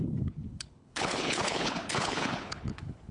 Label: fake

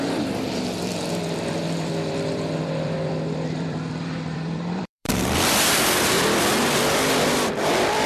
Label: fake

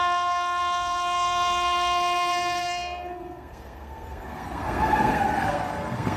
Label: fake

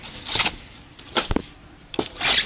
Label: real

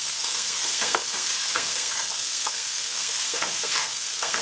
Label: fake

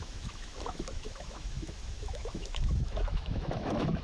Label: fake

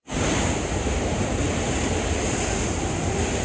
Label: real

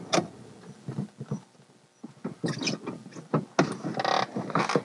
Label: real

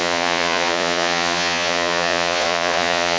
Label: fake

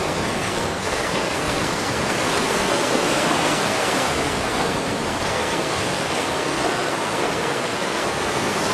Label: fake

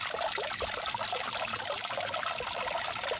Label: real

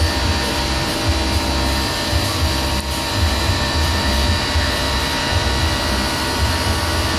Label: fake